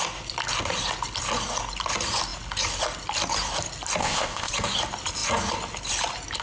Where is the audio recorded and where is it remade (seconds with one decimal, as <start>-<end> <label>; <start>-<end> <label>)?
0.0-4.0 recorded; 4.0-4.5 remade; 4.5-6.4 recorded